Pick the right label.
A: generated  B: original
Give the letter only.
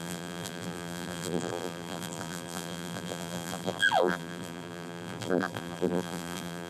A